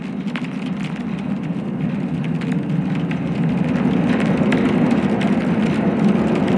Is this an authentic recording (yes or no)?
yes